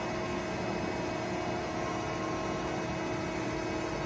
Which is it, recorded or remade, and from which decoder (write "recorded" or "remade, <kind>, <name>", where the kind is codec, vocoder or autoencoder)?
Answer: recorded